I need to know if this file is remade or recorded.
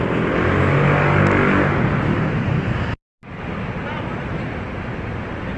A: recorded